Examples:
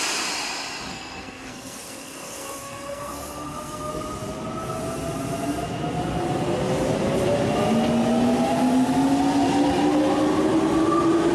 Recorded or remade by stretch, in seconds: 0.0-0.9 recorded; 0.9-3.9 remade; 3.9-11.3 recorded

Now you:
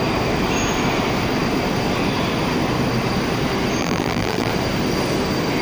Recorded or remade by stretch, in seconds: 0.0-3.8 recorded; 3.8-4.5 remade; 4.5-5.6 recorded